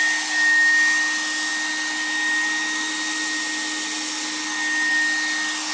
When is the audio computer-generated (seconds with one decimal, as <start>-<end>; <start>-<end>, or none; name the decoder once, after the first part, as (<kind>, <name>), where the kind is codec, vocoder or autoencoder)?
none